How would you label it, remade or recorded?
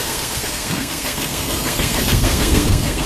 remade